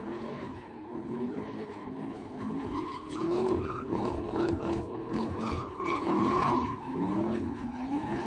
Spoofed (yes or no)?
yes